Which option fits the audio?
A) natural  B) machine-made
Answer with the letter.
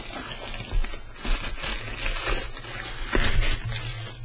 A